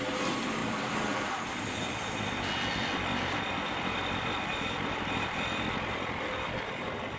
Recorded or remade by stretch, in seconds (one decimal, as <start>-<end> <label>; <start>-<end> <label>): 0.0-7.2 recorded